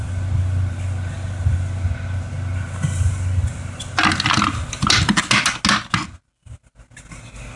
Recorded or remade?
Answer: recorded